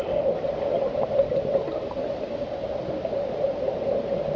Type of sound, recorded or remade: recorded